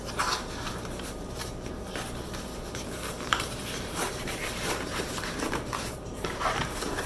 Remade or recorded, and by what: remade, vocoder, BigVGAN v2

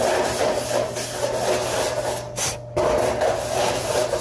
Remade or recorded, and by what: recorded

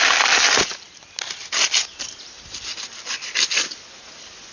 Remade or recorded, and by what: recorded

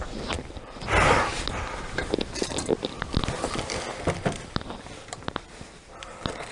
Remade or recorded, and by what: remade, vocoder, BigVGAN v2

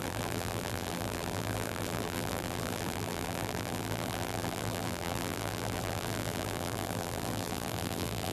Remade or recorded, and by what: remade, vocoder, BigVGAN v2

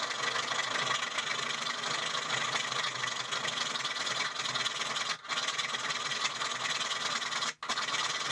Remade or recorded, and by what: recorded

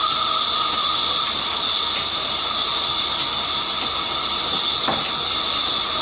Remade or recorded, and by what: remade, vocoder, BigVGAN v2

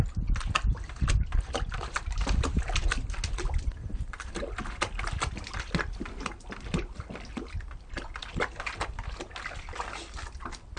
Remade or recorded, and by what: recorded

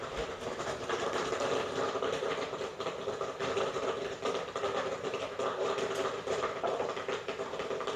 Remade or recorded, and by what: remade, vocoder, BigVGAN v2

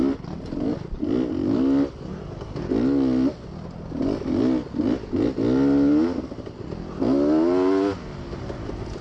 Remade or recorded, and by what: recorded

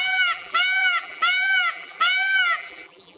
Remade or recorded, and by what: remade, vocoder, BigVGAN v2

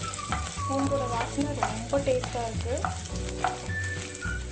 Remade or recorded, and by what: recorded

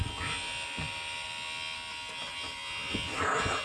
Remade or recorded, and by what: recorded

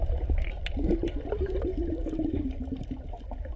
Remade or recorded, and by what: remade, vocoder, BigVGAN v2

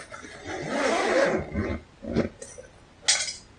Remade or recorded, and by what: recorded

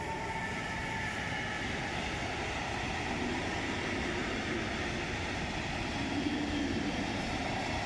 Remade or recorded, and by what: recorded